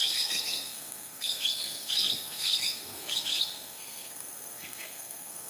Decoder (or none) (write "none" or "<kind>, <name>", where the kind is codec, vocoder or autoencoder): codec, SNAC